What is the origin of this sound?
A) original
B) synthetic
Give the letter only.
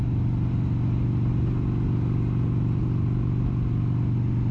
A